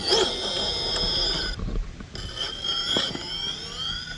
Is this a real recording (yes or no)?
yes